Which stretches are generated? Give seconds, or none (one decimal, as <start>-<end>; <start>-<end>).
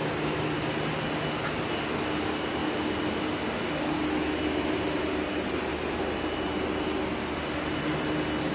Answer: none